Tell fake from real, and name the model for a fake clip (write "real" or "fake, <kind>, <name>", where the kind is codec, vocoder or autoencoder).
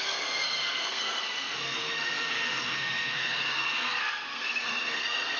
fake, codec, SNAC